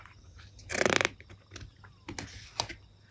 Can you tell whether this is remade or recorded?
recorded